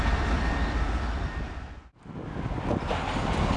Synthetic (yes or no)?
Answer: no